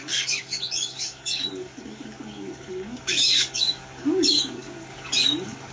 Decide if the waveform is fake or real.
fake